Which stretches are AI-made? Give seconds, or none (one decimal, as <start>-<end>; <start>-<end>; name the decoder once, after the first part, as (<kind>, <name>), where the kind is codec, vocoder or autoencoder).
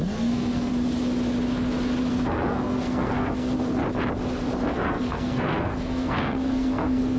0.0-0.7 (codec, SNAC); 2.1-3.8; 4.6-7.2